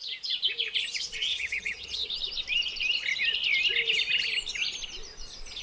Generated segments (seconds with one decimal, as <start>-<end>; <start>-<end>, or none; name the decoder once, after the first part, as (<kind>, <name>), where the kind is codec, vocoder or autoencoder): 1.3-2.1 (vocoder, HiFi-GAN)